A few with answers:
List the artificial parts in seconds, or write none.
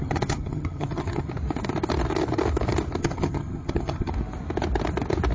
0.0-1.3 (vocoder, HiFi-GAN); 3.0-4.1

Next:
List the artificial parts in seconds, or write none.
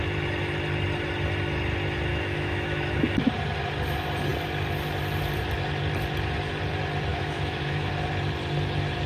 2.1-3.3 (autoencoder, DAC-VAE); 7.1-7.9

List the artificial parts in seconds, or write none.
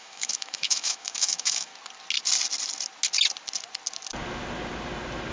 0.0-1.7 (autoencoder, DAC-VAE)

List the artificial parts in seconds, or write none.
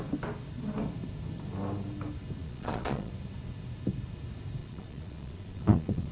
2.4-3.1 (vocoder, Vocos); 4.6-6.1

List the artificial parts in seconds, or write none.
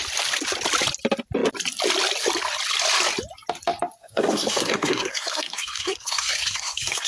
4.0-7.1 (codec, SNAC)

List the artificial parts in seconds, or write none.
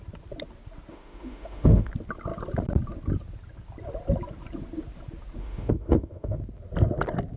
0.9-1.9 (autoencoder, DAC-VAE); 5.4-6.4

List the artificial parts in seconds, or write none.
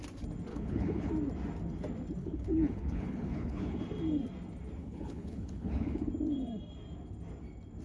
0.5-1.1 (codec, HILCodec); 2.2-3.8; 4.8-6.1